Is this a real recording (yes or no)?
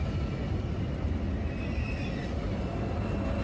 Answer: yes